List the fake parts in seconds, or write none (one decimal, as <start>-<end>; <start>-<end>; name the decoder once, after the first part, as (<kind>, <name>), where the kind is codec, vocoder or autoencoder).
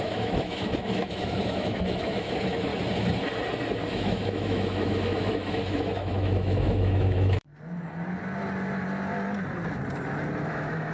0.0-2.7 (autoencoder, DAC-VAE); 3.9-7.5; 10.4-10.9